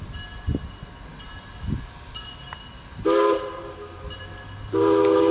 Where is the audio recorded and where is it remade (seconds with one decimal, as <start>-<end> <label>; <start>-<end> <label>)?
0.0-5.3 recorded

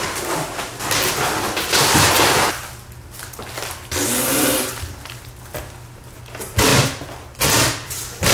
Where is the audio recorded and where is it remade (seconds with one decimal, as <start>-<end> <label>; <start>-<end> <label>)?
0.0-8.3 recorded

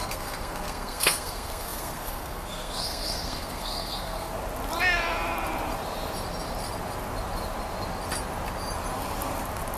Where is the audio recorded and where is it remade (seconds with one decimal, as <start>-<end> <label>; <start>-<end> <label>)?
0.0-4.3 remade; 4.3-9.8 recorded

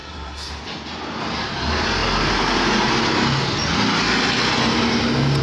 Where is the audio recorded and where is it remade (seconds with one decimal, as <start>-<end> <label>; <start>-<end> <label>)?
0.0-0.5 remade; 0.5-5.4 recorded

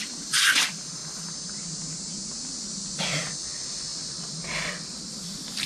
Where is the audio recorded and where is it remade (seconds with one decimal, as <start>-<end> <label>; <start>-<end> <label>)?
0.0-5.7 recorded